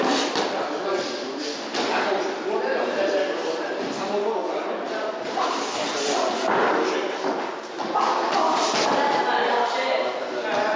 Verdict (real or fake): real